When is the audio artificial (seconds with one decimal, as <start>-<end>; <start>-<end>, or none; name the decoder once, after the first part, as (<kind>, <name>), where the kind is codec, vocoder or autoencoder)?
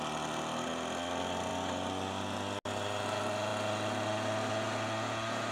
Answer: none